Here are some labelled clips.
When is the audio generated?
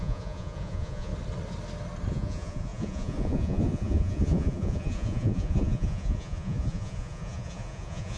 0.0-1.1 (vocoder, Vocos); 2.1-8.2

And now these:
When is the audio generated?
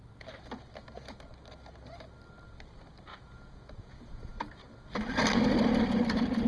3.1-4.3 (vocoder, Vocos)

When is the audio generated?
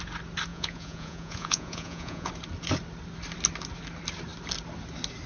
0.5-2.3 (vocoder, Vocos)